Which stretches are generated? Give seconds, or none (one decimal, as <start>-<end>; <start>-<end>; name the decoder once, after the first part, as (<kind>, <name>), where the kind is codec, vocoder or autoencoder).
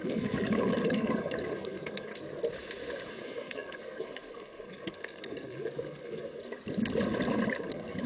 0.0-2.1 (codec, SNAC); 3.1-6.5; 7.6-8.1